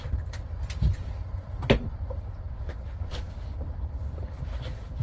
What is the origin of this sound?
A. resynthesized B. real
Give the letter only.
B